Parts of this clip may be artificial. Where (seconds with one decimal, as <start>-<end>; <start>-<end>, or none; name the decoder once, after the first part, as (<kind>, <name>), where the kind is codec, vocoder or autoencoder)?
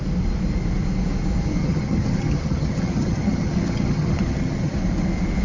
1.6-4.8 (vocoder, HiFi-GAN)